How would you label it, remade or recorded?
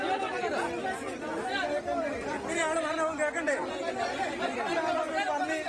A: recorded